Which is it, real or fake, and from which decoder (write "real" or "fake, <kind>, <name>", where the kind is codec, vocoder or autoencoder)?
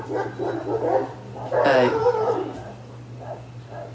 real